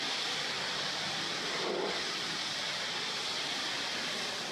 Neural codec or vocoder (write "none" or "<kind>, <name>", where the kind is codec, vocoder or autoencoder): none